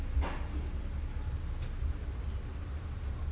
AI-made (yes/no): no